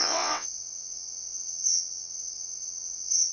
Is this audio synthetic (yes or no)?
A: yes